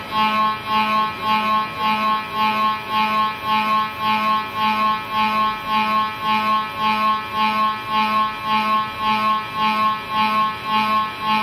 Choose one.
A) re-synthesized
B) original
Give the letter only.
B